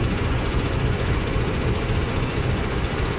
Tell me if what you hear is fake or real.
fake